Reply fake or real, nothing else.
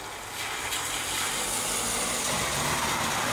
real